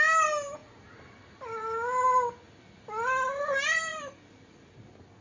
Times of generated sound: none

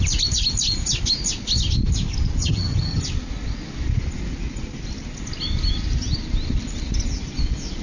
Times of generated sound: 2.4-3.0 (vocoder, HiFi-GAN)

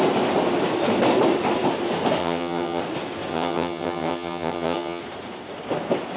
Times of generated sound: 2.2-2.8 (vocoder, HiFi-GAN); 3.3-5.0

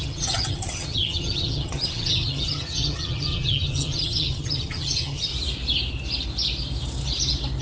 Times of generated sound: 0.0-5.3 (vocoder, HiFi-GAN)

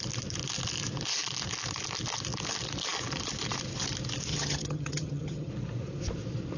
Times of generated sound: 4.3-5.5 (vocoder, HiFi-GAN)

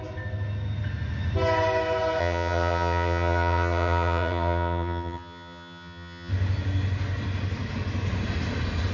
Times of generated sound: 2.2-6.3 (vocoder, HiFi-GAN)

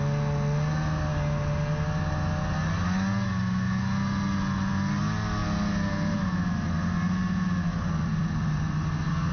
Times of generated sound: none